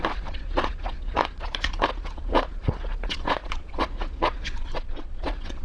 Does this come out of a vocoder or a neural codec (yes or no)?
yes